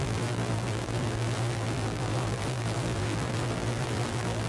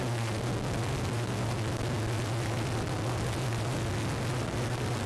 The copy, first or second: first